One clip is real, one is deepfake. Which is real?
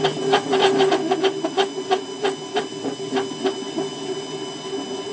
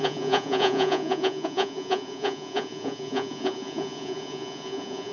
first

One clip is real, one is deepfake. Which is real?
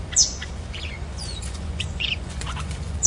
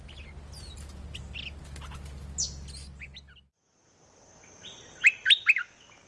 second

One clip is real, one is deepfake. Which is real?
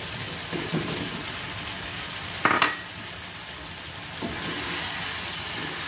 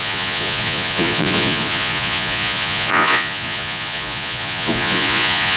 first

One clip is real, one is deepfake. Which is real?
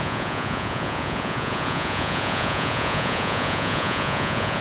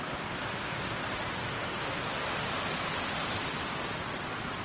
second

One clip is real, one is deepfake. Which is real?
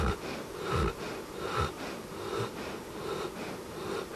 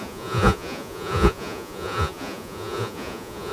first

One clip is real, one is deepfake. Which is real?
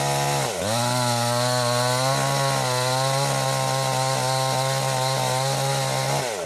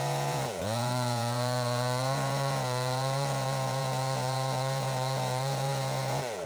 first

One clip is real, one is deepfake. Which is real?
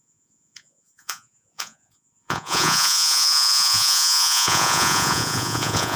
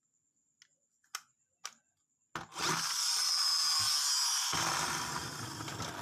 second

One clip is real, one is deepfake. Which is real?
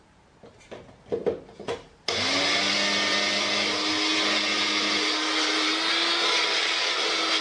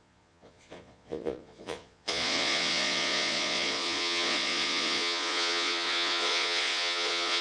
first